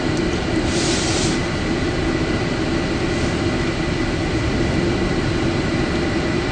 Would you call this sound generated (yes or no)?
no